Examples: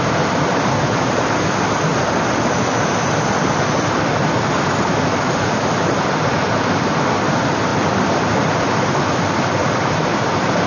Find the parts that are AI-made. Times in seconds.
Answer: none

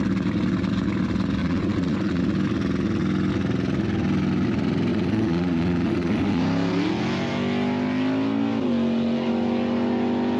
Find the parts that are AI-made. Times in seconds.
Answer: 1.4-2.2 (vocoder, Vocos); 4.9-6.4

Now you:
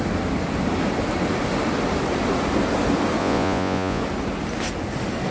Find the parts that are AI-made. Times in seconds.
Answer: 3.2-4.0 (vocoder, Vocos)

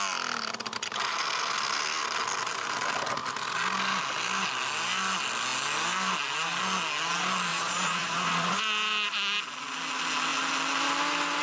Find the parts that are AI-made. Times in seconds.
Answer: 7.5-8.6 (vocoder, Vocos)